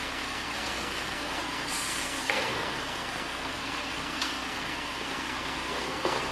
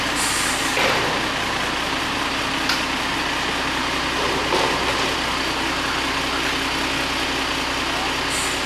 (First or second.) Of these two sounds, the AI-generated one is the first